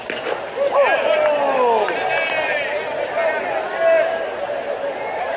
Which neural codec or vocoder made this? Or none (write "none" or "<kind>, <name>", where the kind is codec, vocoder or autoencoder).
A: none